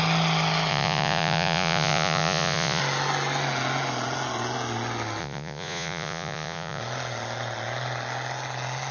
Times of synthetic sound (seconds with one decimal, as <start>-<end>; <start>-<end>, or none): 0.7-2.8; 5.2-6.8